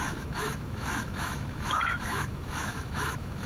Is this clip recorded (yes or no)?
no